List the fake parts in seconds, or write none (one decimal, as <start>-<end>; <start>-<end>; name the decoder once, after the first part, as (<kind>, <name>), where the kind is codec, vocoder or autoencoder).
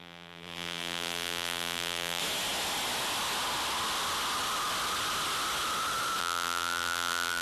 0.0-2.2 (vocoder, BigVGAN v2); 6.2-7.4